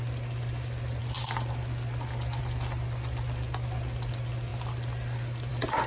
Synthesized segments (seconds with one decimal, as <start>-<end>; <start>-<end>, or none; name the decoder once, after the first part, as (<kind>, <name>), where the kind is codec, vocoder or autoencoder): none